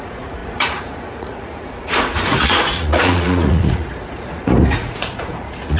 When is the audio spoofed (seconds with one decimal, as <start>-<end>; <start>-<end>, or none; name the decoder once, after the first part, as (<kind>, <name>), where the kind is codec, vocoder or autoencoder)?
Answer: 0.0-5.8 (vocoder, Vocos)